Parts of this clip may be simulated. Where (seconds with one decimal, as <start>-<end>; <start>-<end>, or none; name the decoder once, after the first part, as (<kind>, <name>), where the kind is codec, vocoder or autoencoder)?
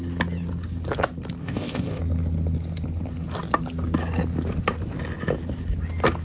1.4-2.0 (codec, ZipCodec)